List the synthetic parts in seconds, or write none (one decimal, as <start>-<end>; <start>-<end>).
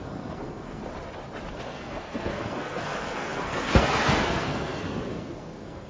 0.0-0.8; 1.5-5.9